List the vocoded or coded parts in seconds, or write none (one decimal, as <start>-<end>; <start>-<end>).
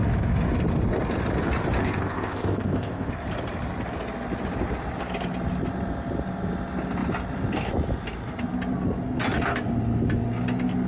1.8-3.1